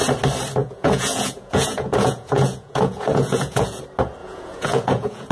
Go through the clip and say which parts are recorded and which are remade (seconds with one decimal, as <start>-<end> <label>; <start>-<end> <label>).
0.0-0.6 recorded; 0.6-3.8 remade; 3.8-4.2 recorded; 4.2-5.3 remade